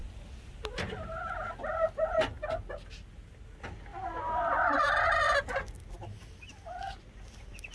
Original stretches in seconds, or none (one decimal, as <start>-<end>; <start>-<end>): 0.0-7.7